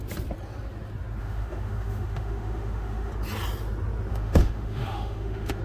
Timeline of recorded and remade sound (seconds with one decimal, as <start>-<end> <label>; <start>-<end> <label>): 0.0-1.2 recorded; 1.2-3.1 remade; 3.1-4.1 recorded; 4.1-5.6 remade